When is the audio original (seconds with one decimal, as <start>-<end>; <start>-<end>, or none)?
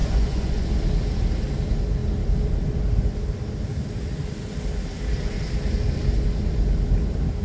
0.7-7.4